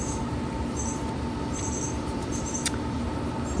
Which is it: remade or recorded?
remade